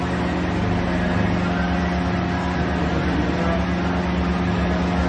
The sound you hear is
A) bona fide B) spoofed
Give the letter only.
A